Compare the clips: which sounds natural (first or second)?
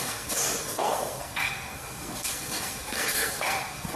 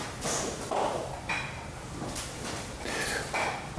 second